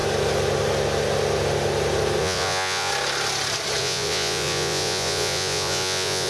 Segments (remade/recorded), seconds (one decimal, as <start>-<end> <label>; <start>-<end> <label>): 0.0-2.2 recorded; 2.2-2.9 remade; 2.9-3.8 recorded; 3.8-6.3 remade